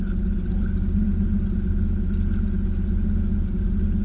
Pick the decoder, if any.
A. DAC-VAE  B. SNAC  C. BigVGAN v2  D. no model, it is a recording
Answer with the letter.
D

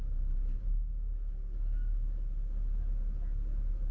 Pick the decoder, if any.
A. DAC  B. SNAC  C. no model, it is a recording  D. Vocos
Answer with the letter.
C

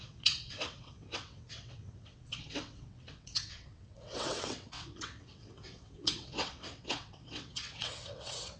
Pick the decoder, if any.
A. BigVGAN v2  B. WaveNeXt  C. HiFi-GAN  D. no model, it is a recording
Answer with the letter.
B